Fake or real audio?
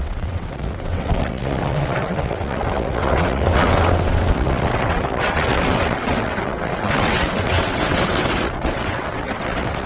fake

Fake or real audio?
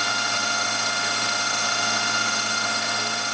real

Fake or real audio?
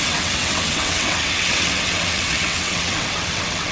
fake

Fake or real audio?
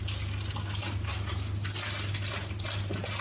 real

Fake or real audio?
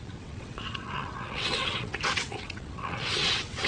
fake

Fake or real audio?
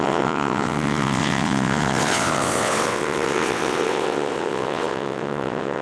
fake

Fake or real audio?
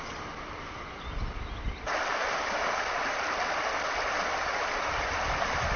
real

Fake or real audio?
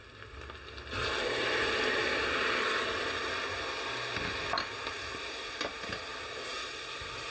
real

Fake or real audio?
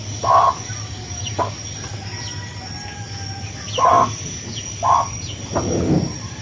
real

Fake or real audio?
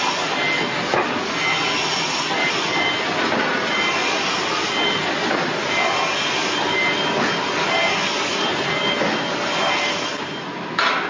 real